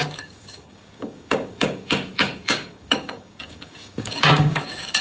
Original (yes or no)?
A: no